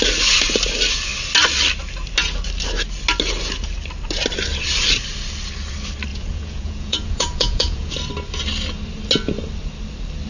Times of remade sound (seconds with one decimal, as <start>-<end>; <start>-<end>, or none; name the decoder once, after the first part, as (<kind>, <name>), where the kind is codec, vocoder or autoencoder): 6.1-7.9 (vocoder, Vocos)